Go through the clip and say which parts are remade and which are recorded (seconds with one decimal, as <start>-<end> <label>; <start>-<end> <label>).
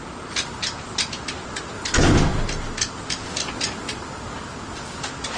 0.0-5.4 recorded